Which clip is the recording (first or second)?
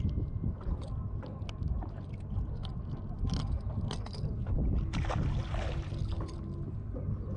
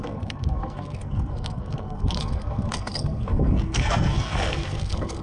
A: first